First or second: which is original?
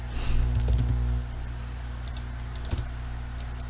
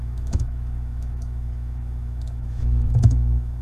first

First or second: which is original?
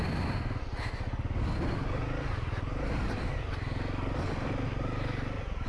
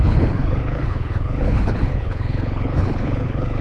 first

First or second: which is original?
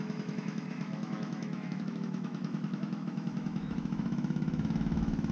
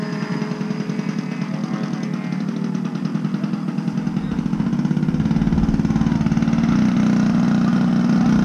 second